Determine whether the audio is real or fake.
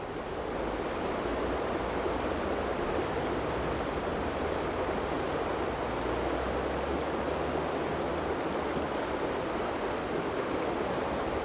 real